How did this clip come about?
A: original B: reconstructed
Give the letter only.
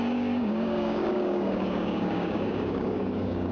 B